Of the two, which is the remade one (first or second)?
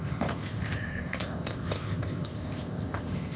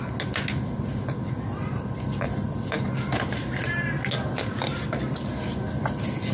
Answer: first